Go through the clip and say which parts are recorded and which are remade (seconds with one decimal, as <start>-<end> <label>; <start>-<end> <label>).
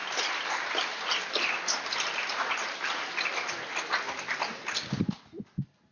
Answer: 0.0-5.9 recorded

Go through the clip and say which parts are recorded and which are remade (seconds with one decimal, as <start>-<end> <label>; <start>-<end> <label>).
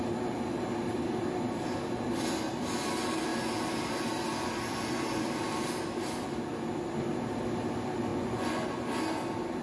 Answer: 0.0-8.1 recorded; 8.1-8.8 remade; 8.8-9.6 recorded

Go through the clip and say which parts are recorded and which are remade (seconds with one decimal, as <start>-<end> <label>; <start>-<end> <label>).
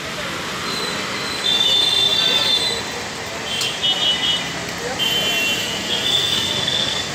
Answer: 0.0-5.6 recorded; 5.6-7.1 remade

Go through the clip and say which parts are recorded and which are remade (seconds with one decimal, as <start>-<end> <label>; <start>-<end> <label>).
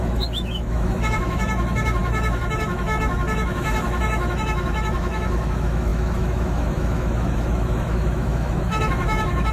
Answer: 0.0-9.5 remade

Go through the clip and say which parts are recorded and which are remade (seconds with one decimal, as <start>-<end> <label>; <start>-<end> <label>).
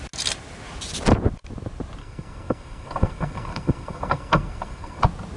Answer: 0.0-2.0 recorded; 2.0-5.0 remade; 5.0-5.4 recorded